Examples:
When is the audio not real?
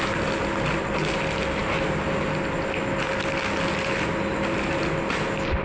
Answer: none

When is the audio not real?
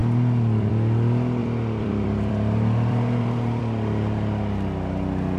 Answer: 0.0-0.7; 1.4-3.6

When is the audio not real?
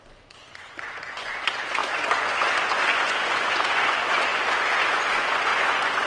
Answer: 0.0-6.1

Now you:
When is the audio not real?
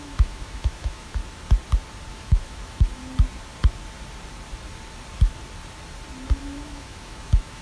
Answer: 0.0-1.2; 2.1-3.0; 6.4-7.6